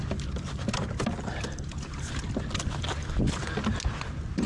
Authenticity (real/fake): real